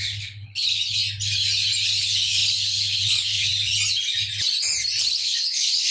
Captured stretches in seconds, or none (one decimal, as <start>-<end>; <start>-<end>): 1.0-2.0; 3.5-5.1